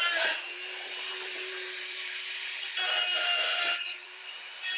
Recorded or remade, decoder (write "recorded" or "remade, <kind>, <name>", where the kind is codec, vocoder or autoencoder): remade, vocoder, BigVGAN v2